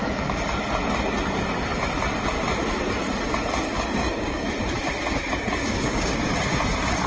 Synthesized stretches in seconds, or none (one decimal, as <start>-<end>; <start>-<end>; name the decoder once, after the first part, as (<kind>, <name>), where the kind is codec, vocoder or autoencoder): 4.0-4.5 (codec, DAC); 5.6-6.3